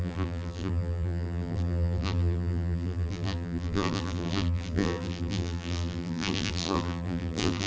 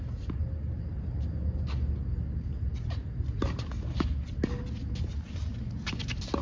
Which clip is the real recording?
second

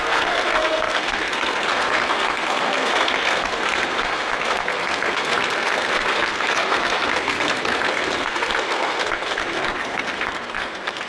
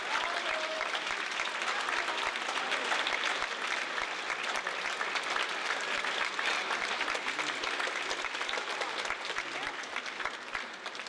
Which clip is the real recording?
second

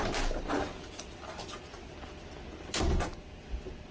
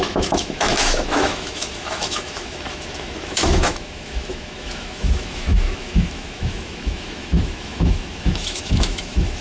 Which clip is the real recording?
first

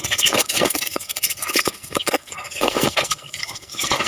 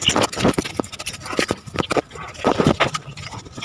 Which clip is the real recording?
second